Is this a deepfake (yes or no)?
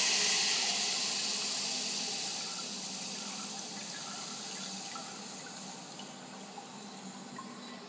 no